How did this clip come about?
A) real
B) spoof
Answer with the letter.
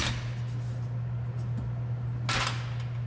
A